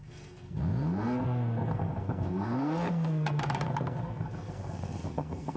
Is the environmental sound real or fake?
fake